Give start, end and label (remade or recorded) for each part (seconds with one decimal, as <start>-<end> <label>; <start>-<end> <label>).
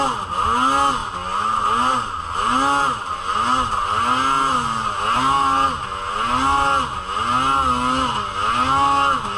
0.0-9.4 recorded